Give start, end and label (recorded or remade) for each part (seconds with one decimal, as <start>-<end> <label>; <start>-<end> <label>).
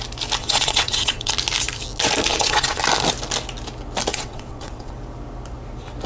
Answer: 0.0-0.4 recorded; 0.4-1.3 remade; 1.3-2.3 recorded; 2.3-2.8 remade; 2.8-4.1 recorded; 4.1-4.9 remade; 4.9-6.1 recorded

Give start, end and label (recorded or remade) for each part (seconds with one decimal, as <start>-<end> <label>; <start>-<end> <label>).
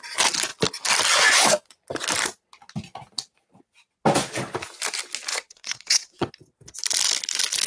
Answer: 0.0-5.3 recorded; 5.3-6.3 remade; 6.3-7.7 recorded